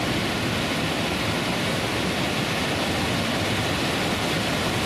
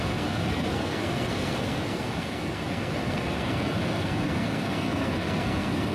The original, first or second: first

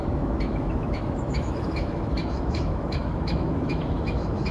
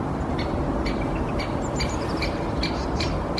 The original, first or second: second